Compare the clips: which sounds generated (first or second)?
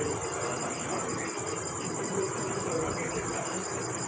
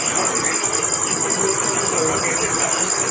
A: first